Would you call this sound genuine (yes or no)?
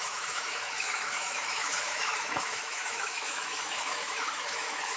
no